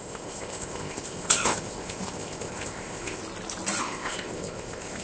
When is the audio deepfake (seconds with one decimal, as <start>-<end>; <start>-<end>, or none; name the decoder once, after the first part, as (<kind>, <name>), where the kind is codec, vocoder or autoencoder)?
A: 0.0-3.2 (codec, ZipCodec); 3.8-5.0